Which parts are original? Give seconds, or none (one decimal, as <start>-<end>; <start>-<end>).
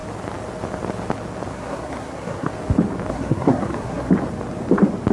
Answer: 0.0-1.5; 2.5-3.1; 4.1-5.1